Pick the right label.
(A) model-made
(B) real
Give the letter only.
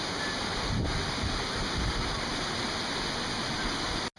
B